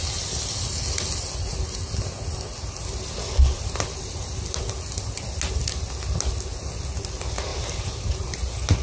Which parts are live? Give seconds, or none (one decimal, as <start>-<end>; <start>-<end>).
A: 0.0-7.5; 8.1-8.8